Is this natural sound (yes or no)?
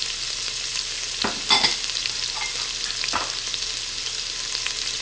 yes